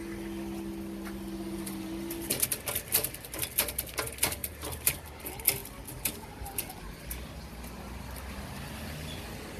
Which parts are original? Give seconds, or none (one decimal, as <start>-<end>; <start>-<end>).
0.0-4.4; 4.9-9.6